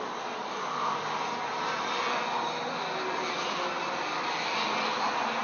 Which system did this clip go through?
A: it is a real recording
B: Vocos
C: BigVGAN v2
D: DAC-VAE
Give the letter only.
A